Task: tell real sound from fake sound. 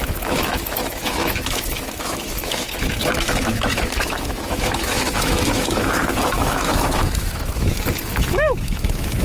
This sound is fake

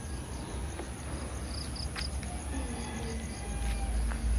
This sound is real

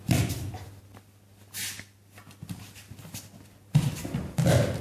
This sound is real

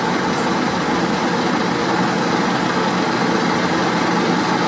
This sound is real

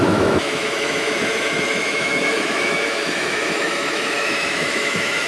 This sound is fake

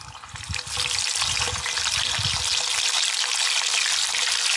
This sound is real